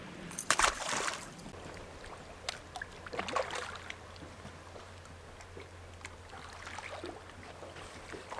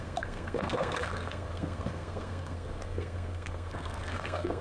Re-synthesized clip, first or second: second